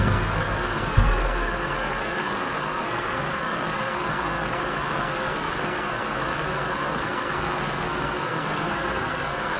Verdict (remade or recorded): remade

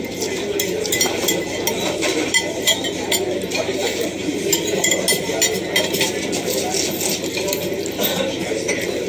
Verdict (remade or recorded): recorded